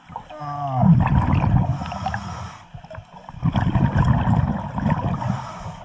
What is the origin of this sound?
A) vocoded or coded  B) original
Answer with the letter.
B